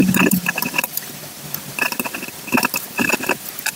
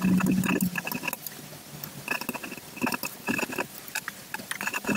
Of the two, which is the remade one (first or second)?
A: first